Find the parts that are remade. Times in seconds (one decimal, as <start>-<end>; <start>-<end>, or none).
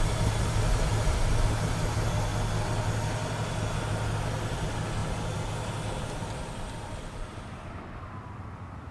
none